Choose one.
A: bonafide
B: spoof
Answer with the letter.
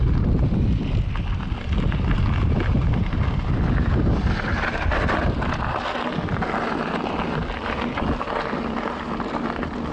A